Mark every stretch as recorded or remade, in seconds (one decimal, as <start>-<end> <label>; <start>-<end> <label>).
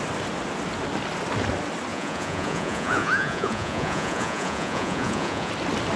0.0-1.9 recorded; 1.9-5.5 remade; 5.5-6.0 recorded